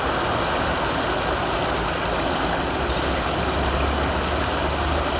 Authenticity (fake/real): real